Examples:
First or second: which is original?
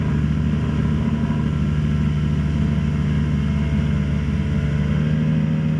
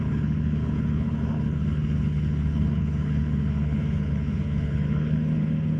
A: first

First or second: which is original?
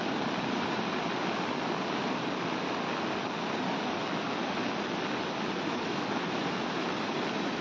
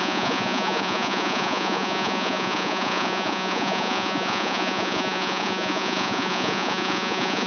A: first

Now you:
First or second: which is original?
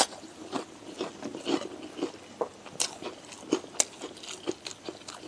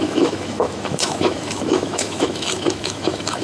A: first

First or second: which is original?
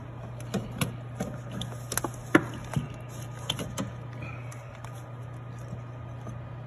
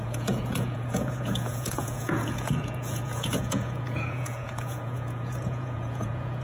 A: first